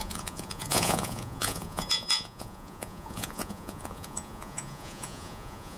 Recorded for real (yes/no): no